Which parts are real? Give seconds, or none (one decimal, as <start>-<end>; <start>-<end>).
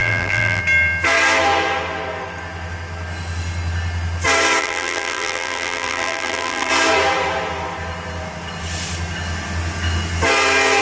0.6-4.6; 6.7-10.8